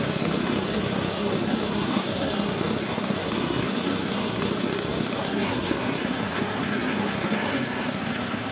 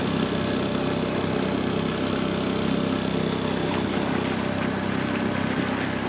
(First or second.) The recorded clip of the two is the second